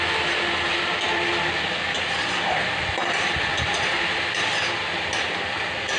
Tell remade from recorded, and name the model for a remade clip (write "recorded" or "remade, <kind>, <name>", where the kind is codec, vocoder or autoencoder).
recorded